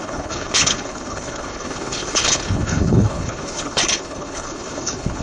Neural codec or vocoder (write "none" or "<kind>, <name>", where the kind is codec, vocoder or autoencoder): codec, HILCodec